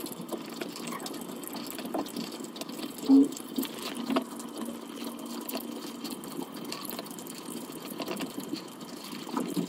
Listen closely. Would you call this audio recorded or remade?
recorded